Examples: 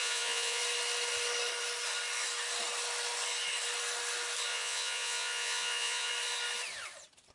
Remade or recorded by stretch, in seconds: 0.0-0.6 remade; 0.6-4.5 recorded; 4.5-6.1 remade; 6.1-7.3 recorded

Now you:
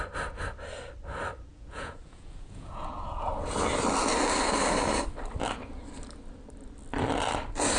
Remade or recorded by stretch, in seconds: 0.0-1.5 recorded; 1.5-3.3 remade; 3.3-7.8 recorded

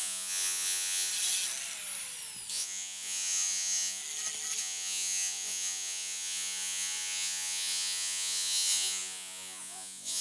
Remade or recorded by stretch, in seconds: 0.0-1.1 remade; 1.1-2.5 recorded; 2.5-4.0 remade; 4.0-4.6 recorded; 4.6-10.2 remade